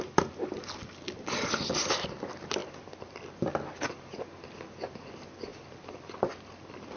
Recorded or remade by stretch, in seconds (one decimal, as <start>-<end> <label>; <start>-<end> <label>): 0.0-7.0 recorded